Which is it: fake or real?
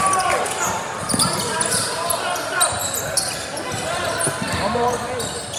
real